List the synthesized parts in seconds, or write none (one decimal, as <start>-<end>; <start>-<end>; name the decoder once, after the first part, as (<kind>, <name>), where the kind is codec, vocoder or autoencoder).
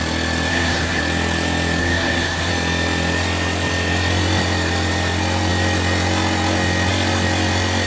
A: 0.5-1.0 (codec, SNAC); 1.8-2.5